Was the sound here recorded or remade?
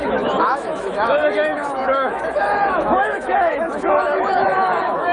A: remade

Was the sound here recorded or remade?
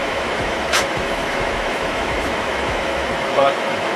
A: remade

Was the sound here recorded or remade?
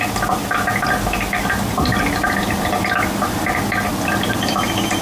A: recorded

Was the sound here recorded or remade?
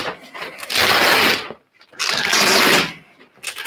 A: recorded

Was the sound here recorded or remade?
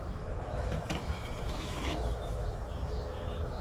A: remade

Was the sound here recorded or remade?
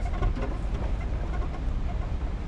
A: recorded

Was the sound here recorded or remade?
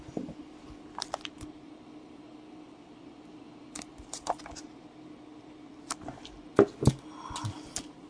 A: recorded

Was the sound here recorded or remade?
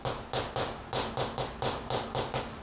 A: recorded